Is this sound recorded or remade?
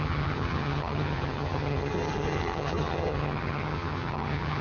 remade